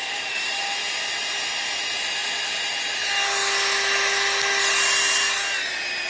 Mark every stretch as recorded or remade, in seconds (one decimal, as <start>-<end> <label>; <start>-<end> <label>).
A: 0.0-0.5 remade; 0.5-6.1 recorded